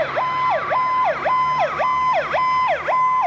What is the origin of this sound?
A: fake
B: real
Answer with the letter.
B